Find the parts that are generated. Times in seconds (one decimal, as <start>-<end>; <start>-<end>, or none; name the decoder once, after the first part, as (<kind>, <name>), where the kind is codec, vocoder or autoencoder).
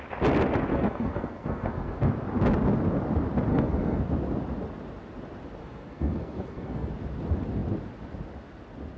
0.7-2.1 (codec, SNAC); 3.5-4.0; 5.6-6.9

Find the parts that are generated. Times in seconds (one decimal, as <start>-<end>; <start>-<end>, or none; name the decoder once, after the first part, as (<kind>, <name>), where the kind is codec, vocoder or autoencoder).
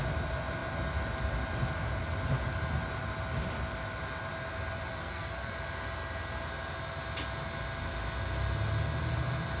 4.9-5.5 (codec, SNAC)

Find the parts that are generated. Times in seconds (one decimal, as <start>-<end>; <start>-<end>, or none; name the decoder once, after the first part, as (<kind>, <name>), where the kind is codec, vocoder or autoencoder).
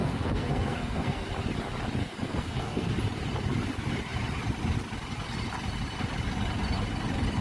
0.0-1.3 (codec, SNAC); 2.0-2.9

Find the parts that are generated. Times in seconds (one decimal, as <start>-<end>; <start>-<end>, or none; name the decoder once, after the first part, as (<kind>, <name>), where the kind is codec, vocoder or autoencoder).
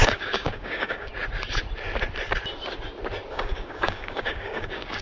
0.0-1.1 (codec, DAC); 3.3-5.0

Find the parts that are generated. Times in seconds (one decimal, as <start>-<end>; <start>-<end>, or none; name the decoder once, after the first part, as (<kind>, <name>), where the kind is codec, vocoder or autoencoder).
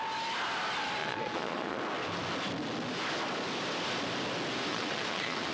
1.0-1.8 (vocoder, Vocos); 4.7-5.5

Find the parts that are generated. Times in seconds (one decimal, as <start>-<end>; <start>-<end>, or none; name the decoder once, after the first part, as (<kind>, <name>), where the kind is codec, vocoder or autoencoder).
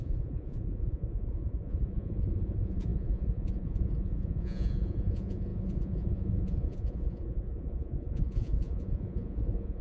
0.0-9.8 (vocoder, Vocos)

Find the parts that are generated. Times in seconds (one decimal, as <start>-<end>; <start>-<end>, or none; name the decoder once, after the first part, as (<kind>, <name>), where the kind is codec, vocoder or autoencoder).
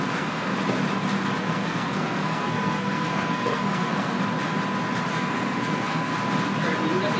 0.0-0.5 (codec, SNAC); 1.4-4.2; 5.1-6.1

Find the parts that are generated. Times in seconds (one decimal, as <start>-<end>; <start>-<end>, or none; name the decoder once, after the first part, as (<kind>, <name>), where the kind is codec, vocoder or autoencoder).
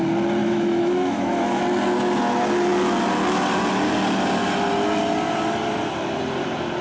0.4-1.6 (autoencoder, DAC-VAE)